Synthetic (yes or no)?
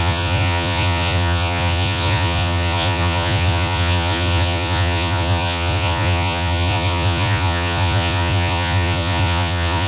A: yes